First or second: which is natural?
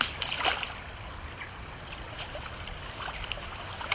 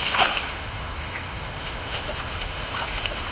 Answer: first